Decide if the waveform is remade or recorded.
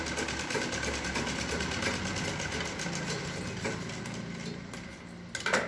recorded